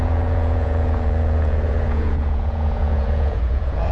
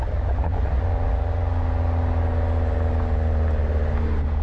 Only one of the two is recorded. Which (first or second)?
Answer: second